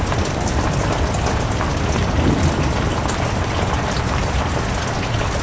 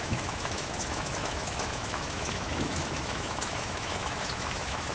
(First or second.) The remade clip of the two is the second